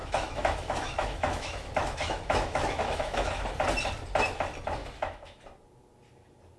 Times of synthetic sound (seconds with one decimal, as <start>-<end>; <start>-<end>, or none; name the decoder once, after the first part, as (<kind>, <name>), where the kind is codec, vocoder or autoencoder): 0.0-3.4 (autoencoder, DAC-VAE); 4.8-5.4

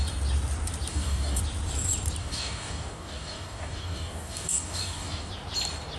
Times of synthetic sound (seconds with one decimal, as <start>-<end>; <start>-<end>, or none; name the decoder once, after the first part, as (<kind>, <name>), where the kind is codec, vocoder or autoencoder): 0.9-1.4 (codec, DAC); 2.2-5.3

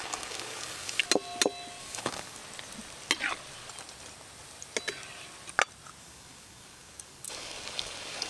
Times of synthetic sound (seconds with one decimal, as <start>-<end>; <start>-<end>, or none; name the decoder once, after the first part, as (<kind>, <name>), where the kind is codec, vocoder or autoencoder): 0.0-1.0 (codec, DAC); 1.8-2.4; 6.0-8.3

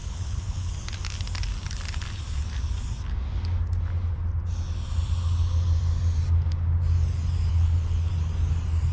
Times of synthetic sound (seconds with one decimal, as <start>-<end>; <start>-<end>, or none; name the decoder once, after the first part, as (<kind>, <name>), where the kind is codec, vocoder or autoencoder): 0.0-0.7 (codec, HILCodec); 7.5-8.1